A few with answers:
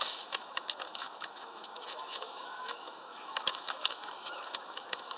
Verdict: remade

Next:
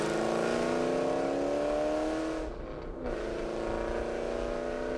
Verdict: recorded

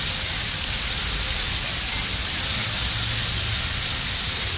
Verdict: recorded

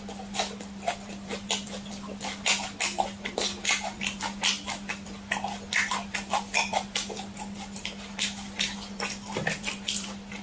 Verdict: recorded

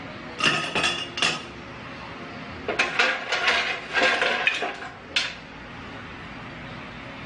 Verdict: recorded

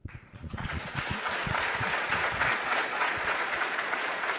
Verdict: remade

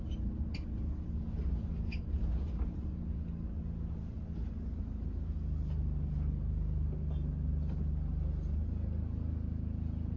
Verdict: recorded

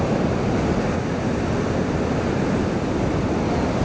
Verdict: recorded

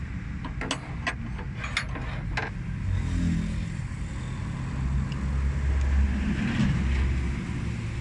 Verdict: recorded